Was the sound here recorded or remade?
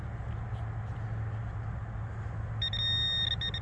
recorded